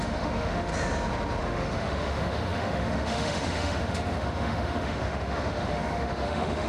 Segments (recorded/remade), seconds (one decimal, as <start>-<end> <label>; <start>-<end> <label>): 0.0-0.7 remade; 0.7-1.4 recorded; 1.4-6.7 remade